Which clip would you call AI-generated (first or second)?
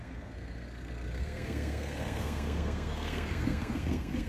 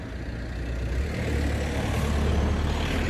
first